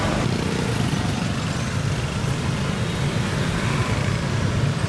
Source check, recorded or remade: recorded